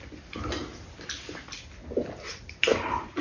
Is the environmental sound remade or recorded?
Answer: recorded